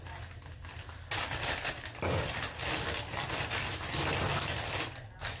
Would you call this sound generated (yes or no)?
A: no